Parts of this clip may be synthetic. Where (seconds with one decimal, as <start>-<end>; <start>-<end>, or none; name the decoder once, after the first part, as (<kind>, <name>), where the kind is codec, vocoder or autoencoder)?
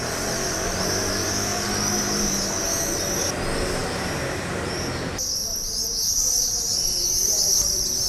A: 3.8-4.7 (vocoder, BigVGAN v2); 5.4-8.1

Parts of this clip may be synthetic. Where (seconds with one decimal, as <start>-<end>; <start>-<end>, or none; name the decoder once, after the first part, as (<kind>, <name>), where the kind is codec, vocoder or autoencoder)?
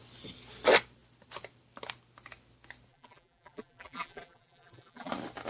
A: 2.9-5.1 (vocoder, BigVGAN v2)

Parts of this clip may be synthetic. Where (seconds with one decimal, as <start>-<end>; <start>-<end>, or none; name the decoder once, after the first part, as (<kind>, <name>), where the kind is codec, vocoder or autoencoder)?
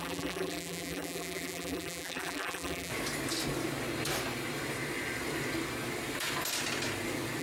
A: 0.0-2.9 (vocoder, BigVGAN v2)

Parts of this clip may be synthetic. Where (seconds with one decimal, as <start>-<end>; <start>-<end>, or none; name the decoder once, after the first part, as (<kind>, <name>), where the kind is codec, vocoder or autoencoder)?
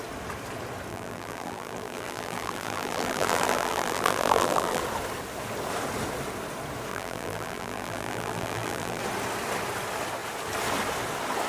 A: 0.9-4.8 (vocoder, BigVGAN v2); 6.9-9.0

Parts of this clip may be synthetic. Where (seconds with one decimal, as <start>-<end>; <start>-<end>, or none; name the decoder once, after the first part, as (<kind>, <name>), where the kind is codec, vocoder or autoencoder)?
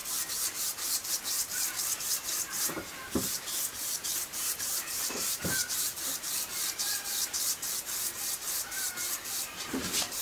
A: 0.0-10.2 (vocoder, BigVGAN v2)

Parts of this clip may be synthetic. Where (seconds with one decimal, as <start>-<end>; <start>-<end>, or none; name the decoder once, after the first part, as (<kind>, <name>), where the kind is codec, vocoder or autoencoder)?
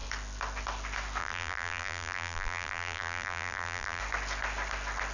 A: 1.2-4.0 (vocoder, BigVGAN v2)